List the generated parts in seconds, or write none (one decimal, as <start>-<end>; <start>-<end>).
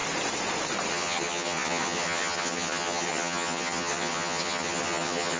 0.9-5.4